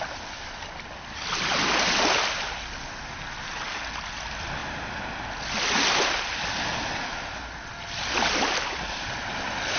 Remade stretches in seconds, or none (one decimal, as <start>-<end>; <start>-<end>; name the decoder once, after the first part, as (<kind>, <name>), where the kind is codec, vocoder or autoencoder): none